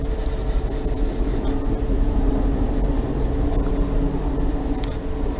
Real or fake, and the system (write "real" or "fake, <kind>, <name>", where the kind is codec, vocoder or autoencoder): real